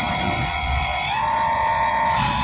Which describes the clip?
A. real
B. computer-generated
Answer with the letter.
B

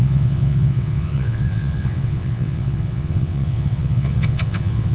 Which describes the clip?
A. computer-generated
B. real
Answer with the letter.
A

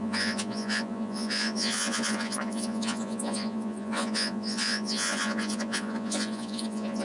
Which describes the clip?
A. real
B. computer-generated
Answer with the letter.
B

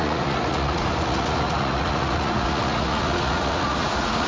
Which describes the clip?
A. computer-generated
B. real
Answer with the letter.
A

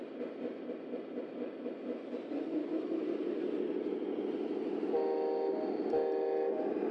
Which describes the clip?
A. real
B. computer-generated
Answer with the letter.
A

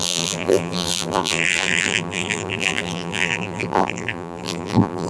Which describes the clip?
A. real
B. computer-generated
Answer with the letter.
B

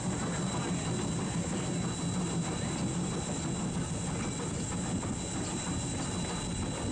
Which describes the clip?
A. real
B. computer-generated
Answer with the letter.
A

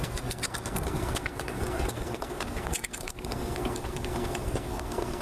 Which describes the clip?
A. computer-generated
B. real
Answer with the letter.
A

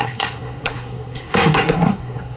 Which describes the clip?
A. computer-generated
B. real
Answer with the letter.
A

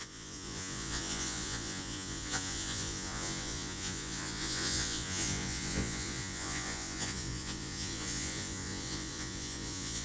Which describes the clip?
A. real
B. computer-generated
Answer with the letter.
B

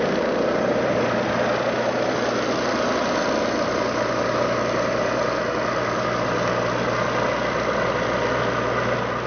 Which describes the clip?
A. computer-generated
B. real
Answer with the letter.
B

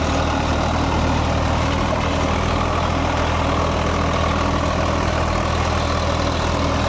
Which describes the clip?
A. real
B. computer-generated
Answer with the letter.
A